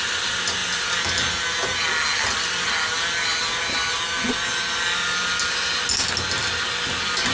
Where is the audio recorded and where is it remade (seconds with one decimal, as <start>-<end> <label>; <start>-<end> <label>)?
0.0-7.3 recorded